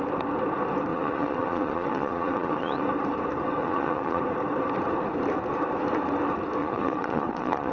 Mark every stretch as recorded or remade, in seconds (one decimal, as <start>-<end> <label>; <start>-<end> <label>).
0.0-0.9 recorded; 0.9-2.8 remade; 2.8-3.6 recorded; 3.6-4.2 remade; 4.2-6.6 recorded; 6.6-7.7 remade